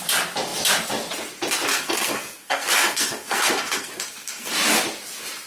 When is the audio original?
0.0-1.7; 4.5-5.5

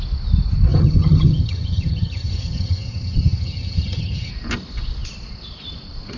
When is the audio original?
0.0-0.7; 4.3-6.2

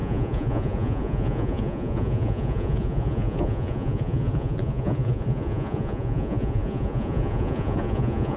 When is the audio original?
none